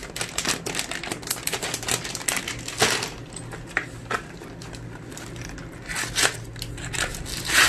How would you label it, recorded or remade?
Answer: recorded